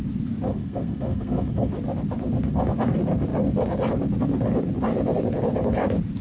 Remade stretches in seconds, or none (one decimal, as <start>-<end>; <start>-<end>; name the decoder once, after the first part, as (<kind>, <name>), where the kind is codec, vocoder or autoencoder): 0.5-1.7 (codec, SNAC)